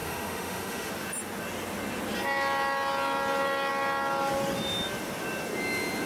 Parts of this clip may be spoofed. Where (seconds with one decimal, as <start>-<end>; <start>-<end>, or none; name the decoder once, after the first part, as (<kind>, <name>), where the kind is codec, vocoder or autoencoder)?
0.0-0.9 (autoencoder, DAC-VAE)